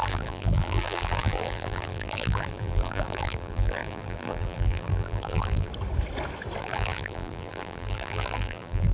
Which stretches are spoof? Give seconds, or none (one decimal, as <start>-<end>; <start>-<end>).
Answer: 0.0-5.7; 6.6-8.9